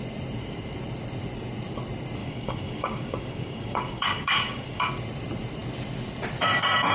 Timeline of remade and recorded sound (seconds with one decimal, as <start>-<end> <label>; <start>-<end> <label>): 0.0-2.2 recorded; 2.2-4.9 remade; 4.9-6.9 recorded